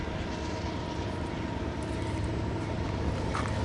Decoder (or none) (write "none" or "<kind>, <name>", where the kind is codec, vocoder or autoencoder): none